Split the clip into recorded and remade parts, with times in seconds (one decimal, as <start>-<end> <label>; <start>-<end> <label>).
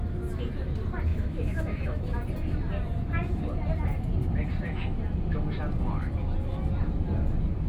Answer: 0.0-1.1 recorded; 1.1-2.1 remade; 2.1-7.7 recorded